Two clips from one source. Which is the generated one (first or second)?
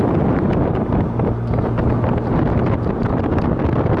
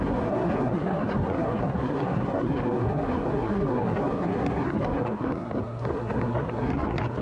second